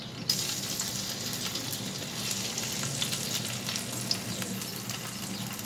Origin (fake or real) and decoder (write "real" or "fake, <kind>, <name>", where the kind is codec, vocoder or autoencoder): real